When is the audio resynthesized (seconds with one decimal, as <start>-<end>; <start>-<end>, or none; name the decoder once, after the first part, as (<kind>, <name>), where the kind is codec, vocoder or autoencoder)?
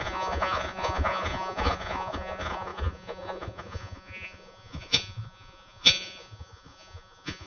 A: 0.0-7.5 (vocoder, Vocos)